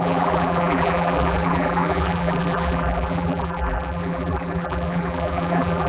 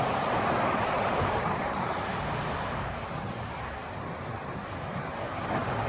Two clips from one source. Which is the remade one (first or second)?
first